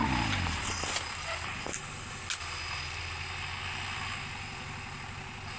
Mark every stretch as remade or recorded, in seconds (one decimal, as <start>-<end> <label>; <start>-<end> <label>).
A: 0.0-5.6 recorded